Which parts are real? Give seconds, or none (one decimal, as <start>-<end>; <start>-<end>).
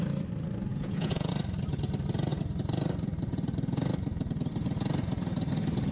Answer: 0.0-0.7; 1.3-5.9